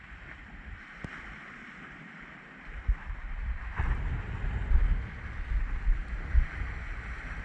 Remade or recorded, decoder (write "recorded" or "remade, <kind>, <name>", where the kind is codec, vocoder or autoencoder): recorded